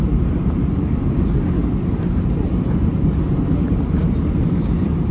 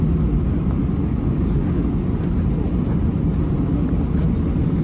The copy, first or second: first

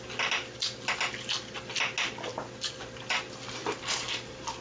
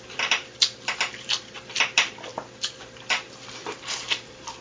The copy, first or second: second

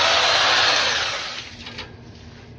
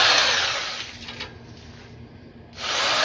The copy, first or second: first